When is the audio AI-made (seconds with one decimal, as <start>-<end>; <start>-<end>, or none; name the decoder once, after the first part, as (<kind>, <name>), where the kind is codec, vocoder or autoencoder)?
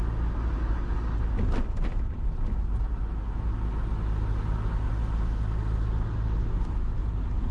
none